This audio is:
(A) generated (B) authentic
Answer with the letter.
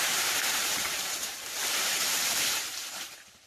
A